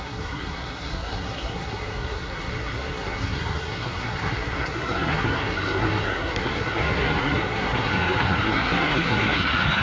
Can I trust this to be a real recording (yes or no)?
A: no